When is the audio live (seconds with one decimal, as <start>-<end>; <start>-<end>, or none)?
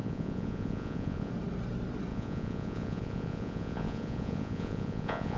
1.3-2.1